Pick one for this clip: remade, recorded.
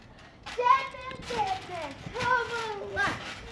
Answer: recorded